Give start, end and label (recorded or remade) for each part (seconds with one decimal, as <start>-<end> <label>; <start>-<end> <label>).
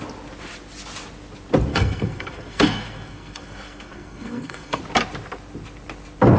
0.0-1.7 recorded; 1.7-4.8 remade; 4.8-6.4 recorded